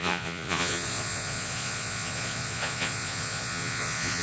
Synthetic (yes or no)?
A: yes